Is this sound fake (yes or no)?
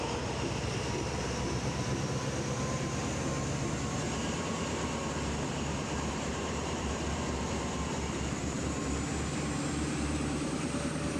yes